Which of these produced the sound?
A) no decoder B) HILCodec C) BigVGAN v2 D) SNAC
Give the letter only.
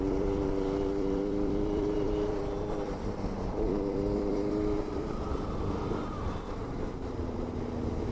C